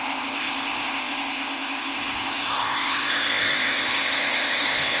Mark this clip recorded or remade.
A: remade